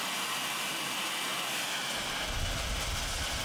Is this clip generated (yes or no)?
no